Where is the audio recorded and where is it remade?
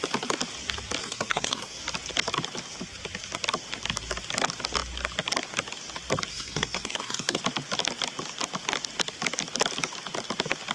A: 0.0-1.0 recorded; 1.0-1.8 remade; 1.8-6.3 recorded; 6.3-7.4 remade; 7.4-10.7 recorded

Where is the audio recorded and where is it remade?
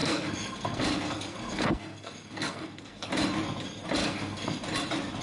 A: 0.0-3.1 remade; 3.1-4.0 recorded; 4.0-4.6 remade; 4.6-5.2 recorded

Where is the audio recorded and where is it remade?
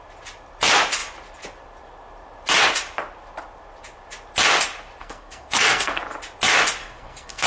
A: 0.0-5.0 recorded; 5.0-6.0 remade; 6.0-6.8 recorded; 6.8-7.5 remade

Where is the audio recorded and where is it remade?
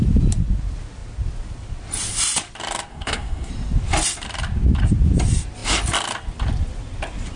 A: 0.0-2.9 recorded; 2.9-3.5 remade; 3.5-7.4 recorded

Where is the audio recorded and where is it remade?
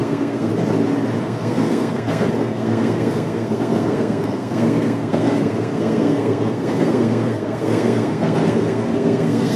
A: 0.0-0.5 remade; 0.5-1.2 recorded; 1.2-9.6 remade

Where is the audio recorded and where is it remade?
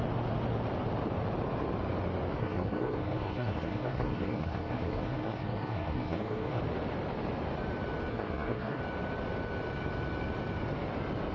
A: 0.0-2.4 recorded; 2.4-6.6 remade; 6.6-8.1 recorded; 8.1-8.8 remade; 8.8-11.3 recorded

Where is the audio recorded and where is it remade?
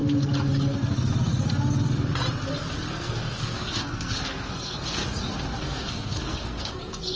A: 0.0-2.9 recorded; 2.9-5.0 remade; 5.0-5.6 recorded; 5.6-7.2 remade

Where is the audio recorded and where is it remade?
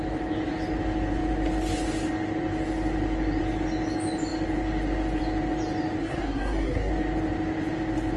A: 0.0-6.0 recorded; 6.0-6.9 remade; 6.9-8.2 recorded